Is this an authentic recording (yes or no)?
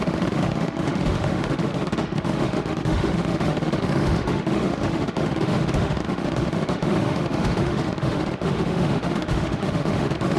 no